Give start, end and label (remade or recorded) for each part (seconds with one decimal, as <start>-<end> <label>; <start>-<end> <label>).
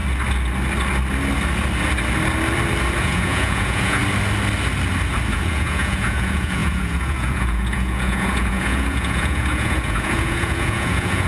0.0-3.0 recorded; 3.0-4.0 remade; 4.0-5.3 recorded; 5.3-11.3 remade